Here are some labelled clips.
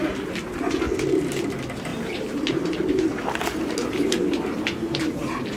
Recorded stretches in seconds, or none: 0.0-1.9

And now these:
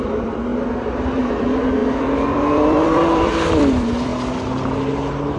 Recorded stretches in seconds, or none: 0.5-1.3; 4.1-5.4

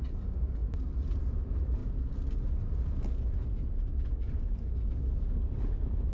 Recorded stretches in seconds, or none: 1.8-5.5